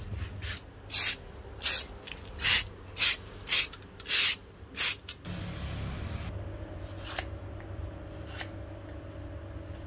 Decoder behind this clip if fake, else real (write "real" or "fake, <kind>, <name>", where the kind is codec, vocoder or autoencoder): real